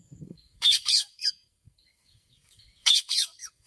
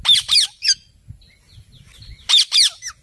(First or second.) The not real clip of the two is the first